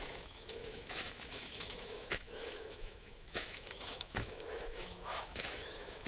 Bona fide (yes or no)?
no